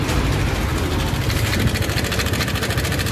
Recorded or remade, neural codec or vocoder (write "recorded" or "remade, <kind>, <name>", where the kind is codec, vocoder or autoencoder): recorded